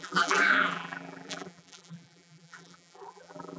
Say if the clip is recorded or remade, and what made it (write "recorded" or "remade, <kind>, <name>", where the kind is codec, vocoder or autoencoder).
remade, vocoder, BigVGAN v2